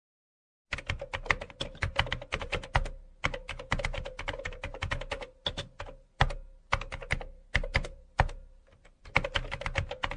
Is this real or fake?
real